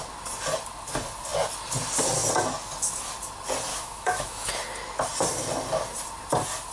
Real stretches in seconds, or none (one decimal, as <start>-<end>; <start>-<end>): 0.0-3.7; 4.5-6.7